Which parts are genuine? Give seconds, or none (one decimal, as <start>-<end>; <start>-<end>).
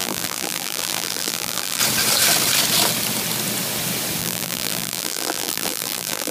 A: 1.8-4.2